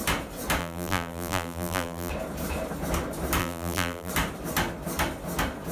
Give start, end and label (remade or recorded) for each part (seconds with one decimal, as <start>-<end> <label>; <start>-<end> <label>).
0.0-0.6 recorded; 0.6-2.1 remade; 2.1-3.4 recorded; 3.4-4.1 remade; 4.1-5.7 recorded